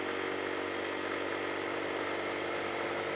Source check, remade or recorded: recorded